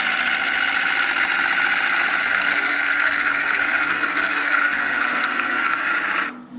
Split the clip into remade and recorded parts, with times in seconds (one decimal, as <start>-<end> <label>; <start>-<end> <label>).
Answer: 0.0-2.2 recorded; 2.2-5.9 remade; 5.9-6.6 recorded